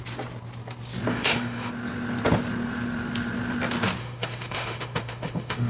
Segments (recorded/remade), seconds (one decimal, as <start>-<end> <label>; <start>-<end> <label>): 0.0-1.1 recorded; 1.1-1.7 remade; 1.7-4.0 recorded; 4.0-5.7 remade

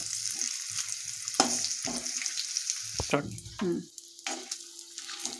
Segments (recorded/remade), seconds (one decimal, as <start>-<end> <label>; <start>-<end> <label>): 0.0-5.4 recorded

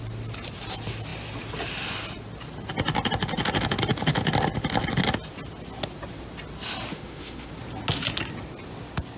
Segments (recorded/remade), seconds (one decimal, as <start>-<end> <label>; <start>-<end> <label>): 0.0-6.9 recorded; 6.9-7.5 remade; 7.5-9.2 recorded

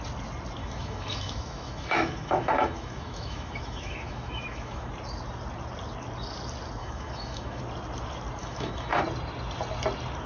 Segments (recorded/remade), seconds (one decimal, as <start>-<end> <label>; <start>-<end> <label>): 0.0-0.6 recorded; 0.6-4.9 remade; 4.9-6.8 recorded; 6.8-7.6 remade; 7.6-8.4 recorded; 8.4-9.0 remade; 9.0-10.3 recorded

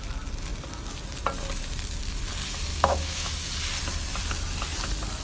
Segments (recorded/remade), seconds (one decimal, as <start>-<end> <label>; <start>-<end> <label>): 0.0-2.7 recorded; 2.7-3.3 remade; 3.3-5.2 recorded

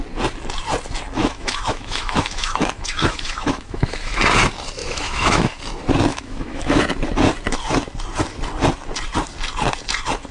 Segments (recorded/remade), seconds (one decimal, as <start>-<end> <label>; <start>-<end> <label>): 0.0-1.2 recorded; 1.2-4.2 remade; 4.2-4.8 recorded; 4.8-5.6 remade; 5.6-6.1 recorded; 6.1-6.8 remade; 6.8-10.3 recorded